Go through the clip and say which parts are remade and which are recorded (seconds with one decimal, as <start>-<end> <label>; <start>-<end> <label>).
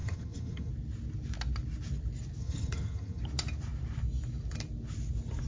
0.0-0.7 remade; 0.7-2.4 recorded; 2.4-3.2 remade; 3.2-5.5 recorded